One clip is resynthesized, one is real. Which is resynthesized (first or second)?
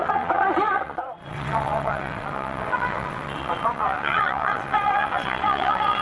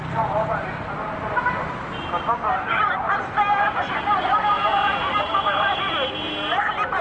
first